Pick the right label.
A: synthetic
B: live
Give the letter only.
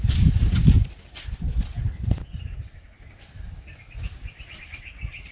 B